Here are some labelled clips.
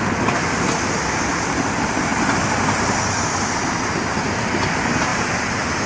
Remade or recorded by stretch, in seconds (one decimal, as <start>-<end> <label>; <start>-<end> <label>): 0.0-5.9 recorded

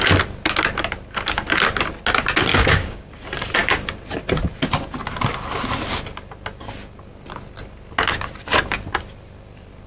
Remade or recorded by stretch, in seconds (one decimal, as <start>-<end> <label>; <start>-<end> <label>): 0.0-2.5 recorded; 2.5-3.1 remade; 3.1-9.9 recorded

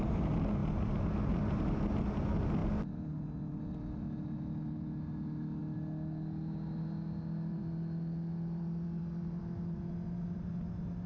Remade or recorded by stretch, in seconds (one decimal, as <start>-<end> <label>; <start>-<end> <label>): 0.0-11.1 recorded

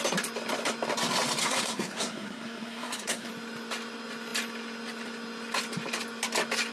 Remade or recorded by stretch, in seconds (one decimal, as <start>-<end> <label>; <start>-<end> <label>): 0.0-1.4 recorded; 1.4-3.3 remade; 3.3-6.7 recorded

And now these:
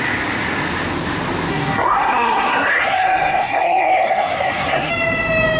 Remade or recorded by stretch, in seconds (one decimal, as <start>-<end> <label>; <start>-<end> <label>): 0.0-1.5 recorded; 1.5-4.9 remade; 4.9-5.6 recorded

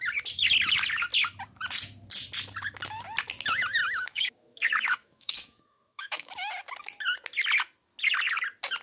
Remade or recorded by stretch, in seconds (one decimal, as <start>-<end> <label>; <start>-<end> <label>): 0.0-3.8 recorded; 3.8-6.5 remade; 6.5-8.8 recorded

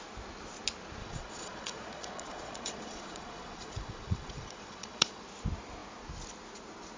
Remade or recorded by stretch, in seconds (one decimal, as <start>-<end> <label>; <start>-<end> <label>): 0.0-1.0 recorded; 1.0-5.2 remade; 5.2-7.0 recorded

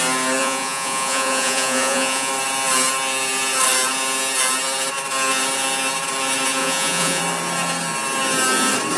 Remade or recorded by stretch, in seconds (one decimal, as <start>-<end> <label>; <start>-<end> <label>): 0.0-0.4 recorded; 0.4-2.3 remade; 2.3-6.6 recorded; 6.6-7.2 remade; 7.2-9.0 recorded